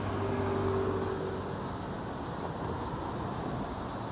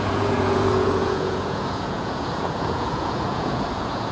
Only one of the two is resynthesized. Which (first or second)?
second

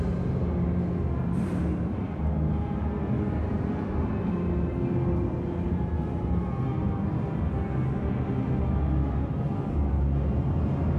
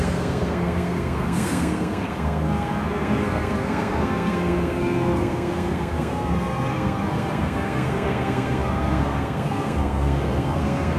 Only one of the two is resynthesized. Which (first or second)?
second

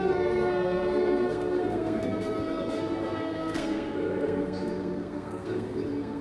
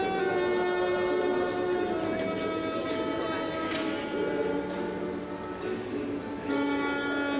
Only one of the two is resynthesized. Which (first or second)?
first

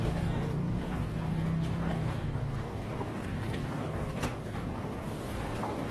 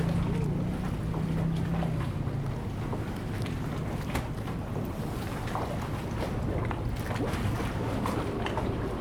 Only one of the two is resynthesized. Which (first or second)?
first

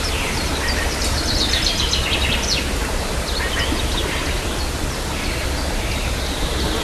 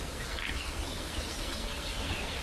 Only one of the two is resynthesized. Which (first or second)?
second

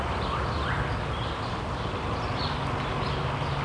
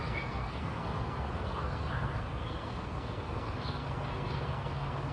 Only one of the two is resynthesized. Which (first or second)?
second